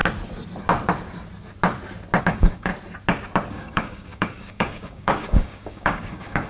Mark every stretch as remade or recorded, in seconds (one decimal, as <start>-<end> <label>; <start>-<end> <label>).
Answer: 0.0-2.2 recorded; 2.2-2.7 remade; 2.7-3.5 recorded; 3.5-6.5 remade